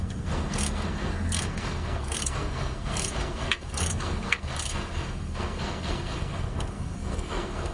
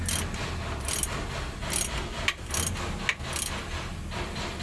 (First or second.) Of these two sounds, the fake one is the first